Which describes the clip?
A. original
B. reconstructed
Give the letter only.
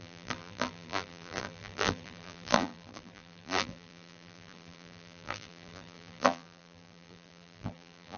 B